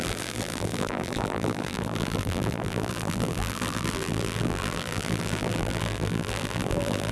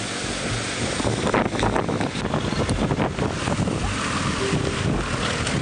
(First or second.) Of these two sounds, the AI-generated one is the first